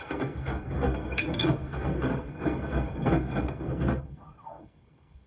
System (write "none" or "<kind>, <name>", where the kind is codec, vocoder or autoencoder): codec, SNAC